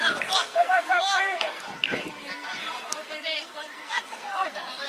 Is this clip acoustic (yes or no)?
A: no